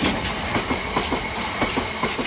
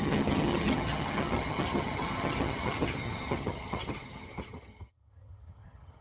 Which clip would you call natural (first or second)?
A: first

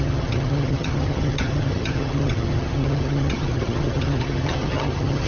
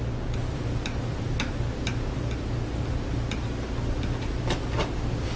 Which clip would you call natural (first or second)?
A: second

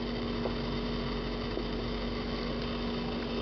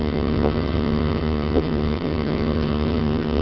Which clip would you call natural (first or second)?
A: first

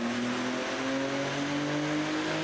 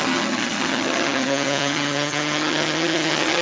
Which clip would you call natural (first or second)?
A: first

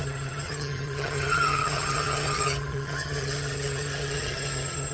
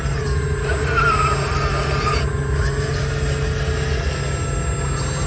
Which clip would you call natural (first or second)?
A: second